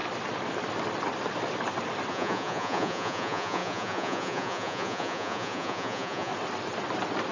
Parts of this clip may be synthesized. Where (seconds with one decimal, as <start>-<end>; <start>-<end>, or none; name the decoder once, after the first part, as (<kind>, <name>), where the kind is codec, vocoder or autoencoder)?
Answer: 2.1-6.3 (vocoder, Vocos)